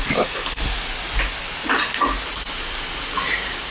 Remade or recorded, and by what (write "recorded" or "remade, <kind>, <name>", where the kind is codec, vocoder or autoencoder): recorded